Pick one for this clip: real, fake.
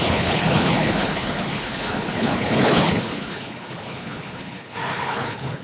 fake